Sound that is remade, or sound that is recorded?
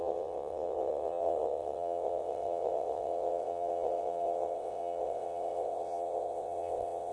remade